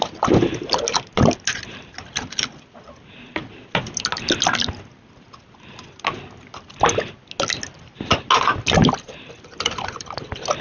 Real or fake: real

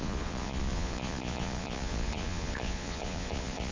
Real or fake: fake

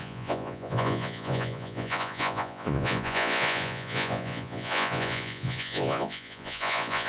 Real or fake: fake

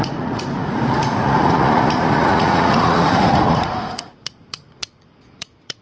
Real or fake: fake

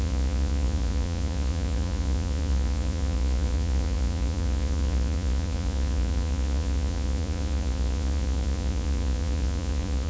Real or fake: fake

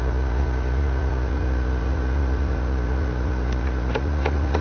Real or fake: fake